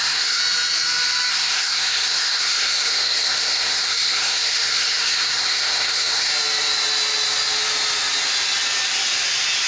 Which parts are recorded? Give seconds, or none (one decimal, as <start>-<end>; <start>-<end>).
0.4-1.3; 6.3-9.7